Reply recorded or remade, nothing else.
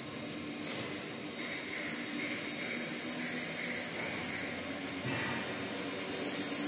recorded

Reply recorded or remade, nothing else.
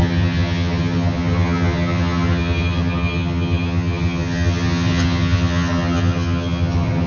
remade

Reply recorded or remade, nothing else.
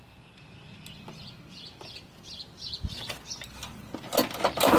recorded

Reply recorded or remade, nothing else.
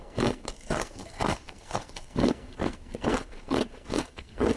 remade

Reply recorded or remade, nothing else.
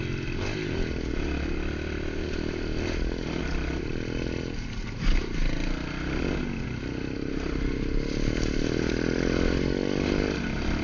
recorded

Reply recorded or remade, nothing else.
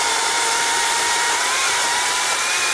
remade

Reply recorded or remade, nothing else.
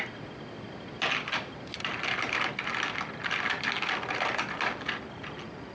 recorded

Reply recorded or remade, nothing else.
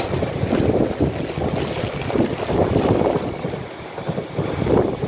recorded